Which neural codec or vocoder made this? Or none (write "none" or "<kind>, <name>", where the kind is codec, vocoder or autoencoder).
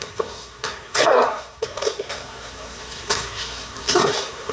codec, SNAC